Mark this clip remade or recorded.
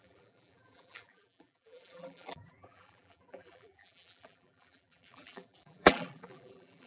remade